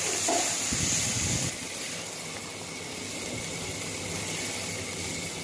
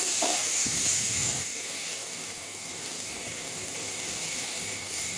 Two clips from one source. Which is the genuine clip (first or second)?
first